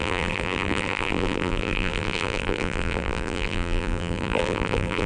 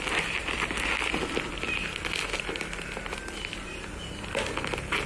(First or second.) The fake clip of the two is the first